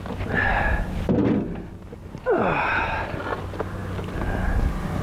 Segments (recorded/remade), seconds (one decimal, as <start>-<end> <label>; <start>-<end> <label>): 0.0-5.0 recorded

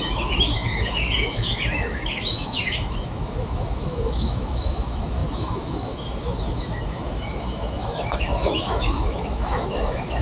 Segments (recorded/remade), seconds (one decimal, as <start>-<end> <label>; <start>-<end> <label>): 0.0-10.2 remade

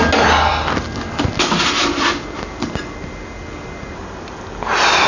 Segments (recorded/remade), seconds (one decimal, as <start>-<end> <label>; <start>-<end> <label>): 0.0-5.1 recorded

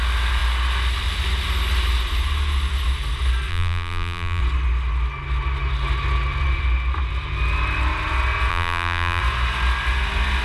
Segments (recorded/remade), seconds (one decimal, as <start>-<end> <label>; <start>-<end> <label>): 0.0-3.5 recorded; 3.5-4.4 remade; 4.4-8.5 recorded; 8.5-9.2 remade; 9.2-10.4 recorded

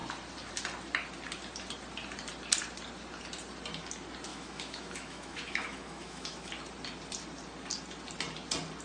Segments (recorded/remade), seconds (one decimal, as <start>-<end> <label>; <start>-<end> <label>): 0.0-4.3 recorded; 4.3-6.5 remade; 6.5-8.8 recorded

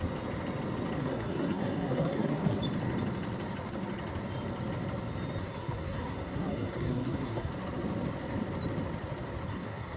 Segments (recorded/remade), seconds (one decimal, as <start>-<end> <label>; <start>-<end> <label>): 0.0-1.0 recorded; 1.0-2.6 remade; 2.6-5.4 recorded; 5.4-7.5 remade; 7.5-9.5 recorded; 9.5-10.0 remade